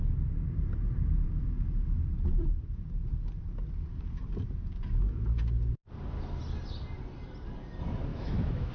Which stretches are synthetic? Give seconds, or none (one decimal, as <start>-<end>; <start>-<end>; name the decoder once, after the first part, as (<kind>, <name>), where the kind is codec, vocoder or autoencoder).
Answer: 8.1-8.7 (autoencoder, DAC-VAE)